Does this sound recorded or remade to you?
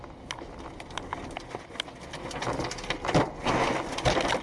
recorded